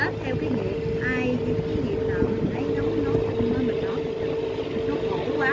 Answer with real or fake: real